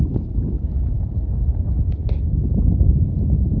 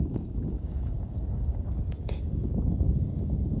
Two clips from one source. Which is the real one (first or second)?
first